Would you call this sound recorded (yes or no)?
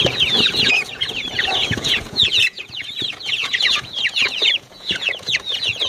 no